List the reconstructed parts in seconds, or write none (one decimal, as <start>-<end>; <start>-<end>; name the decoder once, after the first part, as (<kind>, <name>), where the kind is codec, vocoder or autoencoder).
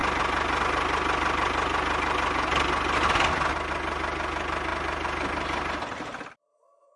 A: none